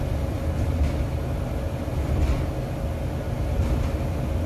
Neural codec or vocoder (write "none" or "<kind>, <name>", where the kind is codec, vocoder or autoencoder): none